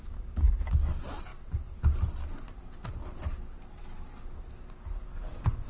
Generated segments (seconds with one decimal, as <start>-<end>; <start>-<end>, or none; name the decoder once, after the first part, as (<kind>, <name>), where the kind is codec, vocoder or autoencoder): none